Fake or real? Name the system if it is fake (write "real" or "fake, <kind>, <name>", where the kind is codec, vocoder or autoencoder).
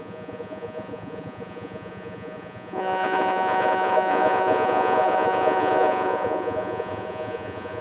fake, vocoder, Vocos